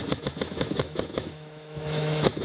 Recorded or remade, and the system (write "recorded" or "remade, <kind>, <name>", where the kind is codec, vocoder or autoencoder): remade, autoencoder, DAC-VAE